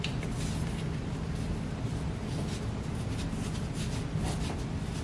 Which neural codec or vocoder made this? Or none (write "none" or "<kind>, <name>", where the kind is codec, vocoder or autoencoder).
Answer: none